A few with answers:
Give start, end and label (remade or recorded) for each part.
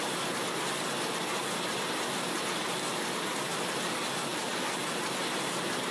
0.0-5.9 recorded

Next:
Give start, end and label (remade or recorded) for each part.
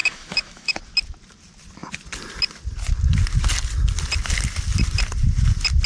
0.0-0.8 remade; 0.8-5.9 recorded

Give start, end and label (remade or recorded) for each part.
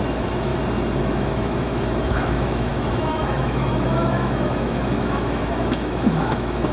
0.0-0.5 remade; 0.5-1.0 recorded; 1.0-6.7 remade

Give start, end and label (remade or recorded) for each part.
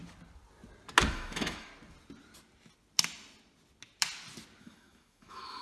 0.0-1.1 recorded; 1.1-1.7 remade; 1.7-4.6 recorded; 4.6-5.6 remade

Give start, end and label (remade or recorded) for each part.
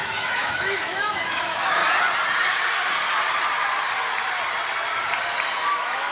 0.0-1.8 remade; 1.8-5.5 recorded; 5.5-6.1 remade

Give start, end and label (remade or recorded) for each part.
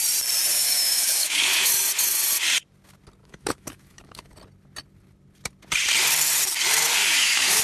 0.0-0.5 recorded; 0.5-1.7 remade; 1.7-3.2 recorded; 3.2-4.3 remade; 4.3-7.0 recorded; 7.0-7.6 remade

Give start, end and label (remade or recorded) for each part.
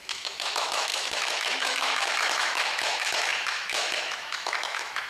0.0-5.1 remade